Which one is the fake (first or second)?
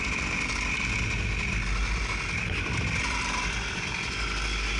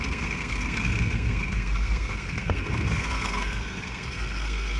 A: second